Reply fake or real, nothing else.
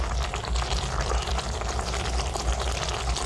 fake